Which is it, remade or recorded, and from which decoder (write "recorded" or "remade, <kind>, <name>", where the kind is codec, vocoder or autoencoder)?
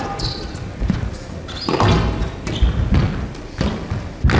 recorded